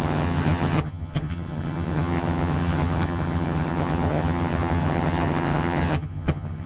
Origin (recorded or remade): remade